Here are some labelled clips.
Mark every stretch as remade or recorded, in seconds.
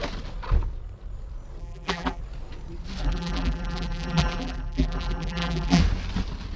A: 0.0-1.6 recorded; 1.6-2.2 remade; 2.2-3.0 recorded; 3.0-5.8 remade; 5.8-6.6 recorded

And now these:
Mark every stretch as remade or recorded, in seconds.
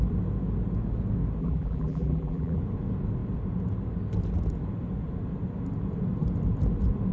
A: 0.0-1.4 recorded; 1.4-2.6 remade; 2.6-7.1 recorded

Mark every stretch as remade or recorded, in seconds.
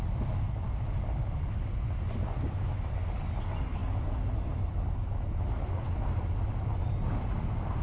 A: 0.0-7.8 recorded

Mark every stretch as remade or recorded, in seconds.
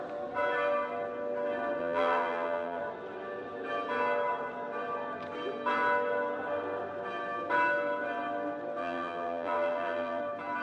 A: 0.0-1.8 recorded; 1.8-2.8 remade; 2.8-8.8 recorded; 8.8-10.2 remade; 10.2-10.6 recorded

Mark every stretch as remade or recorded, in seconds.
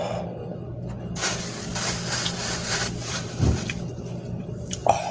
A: 0.0-1.7 recorded; 1.7-5.1 remade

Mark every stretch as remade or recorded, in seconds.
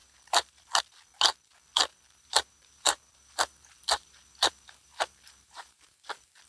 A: 0.0-0.6 remade; 0.6-1.9 recorded; 1.9-5.8 remade; 5.8-6.5 recorded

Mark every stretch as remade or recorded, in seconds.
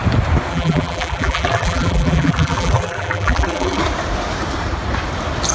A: 0.0-0.5 recorded; 0.5-3.8 remade; 3.8-5.5 recorded